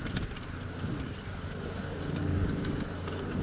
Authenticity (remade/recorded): recorded